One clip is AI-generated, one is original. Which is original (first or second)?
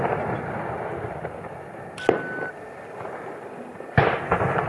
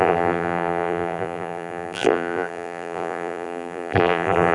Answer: first